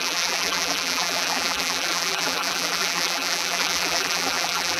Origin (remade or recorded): remade